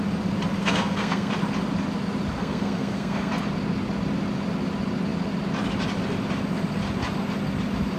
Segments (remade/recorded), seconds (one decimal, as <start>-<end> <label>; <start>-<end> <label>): 0.0-0.6 recorded; 0.6-1.3 remade; 1.3-2.4 recorded; 2.4-3.3 remade; 3.3-8.0 recorded

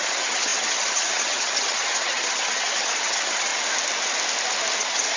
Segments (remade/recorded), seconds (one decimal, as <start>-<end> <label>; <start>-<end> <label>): 0.0-3.5 remade; 3.5-4.8 recorded; 4.8-5.2 remade

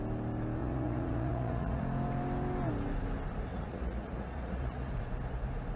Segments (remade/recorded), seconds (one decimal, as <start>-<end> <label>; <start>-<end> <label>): 0.0-0.6 recorded; 0.6-1.8 remade; 1.8-3.5 recorded; 3.5-4.9 remade; 4.9-5.8 recorded